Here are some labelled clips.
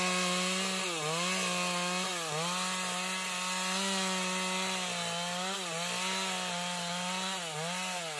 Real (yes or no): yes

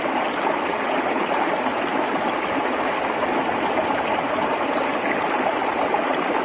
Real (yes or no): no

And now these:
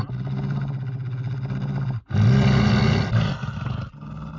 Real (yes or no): yes